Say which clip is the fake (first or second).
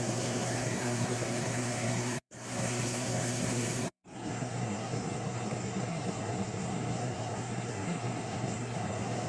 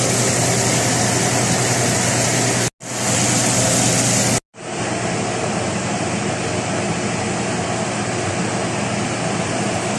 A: first